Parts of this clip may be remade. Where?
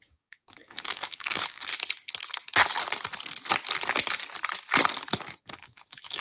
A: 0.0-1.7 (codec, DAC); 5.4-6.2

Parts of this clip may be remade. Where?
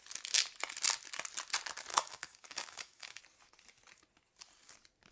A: 1.9-3.2 (codec, DAC)